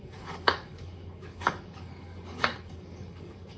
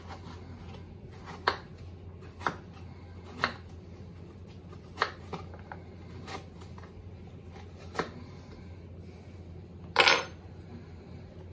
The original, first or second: second